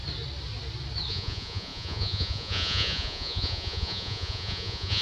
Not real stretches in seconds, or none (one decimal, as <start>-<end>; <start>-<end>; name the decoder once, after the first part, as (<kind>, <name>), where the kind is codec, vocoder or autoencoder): 1.1-5.0 (vocoder, Vocos)